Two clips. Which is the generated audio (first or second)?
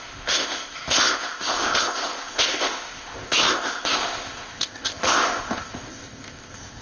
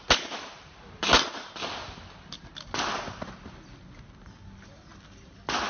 first